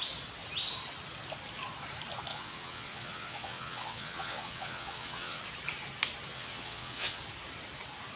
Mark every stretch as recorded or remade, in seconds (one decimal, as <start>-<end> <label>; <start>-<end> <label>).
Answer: 0.0-2.3 recorded; 2.3-5.4 remade; 5.4-6.3 recorded; 6.3-7.2 remade; 7.2-8.2 recorded